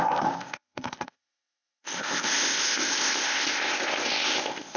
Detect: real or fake fake